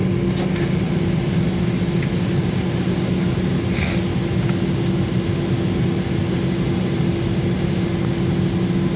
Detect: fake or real real